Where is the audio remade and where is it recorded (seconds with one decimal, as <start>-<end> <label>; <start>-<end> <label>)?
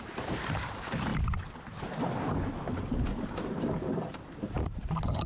0.0-1.1 remade; 1.1-3.6 recorded; 3.6-5.3 remade